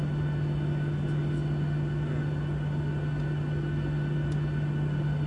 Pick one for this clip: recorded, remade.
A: recorded